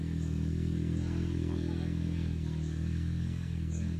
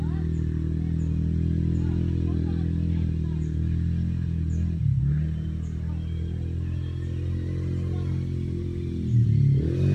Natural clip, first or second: second